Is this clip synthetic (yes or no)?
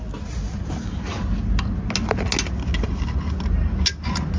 no